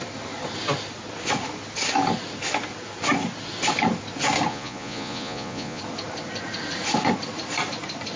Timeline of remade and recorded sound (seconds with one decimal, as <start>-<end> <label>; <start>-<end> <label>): 0.0-4.5 recorded; 4.5-5.8 remade; 5.8-8.2 recorded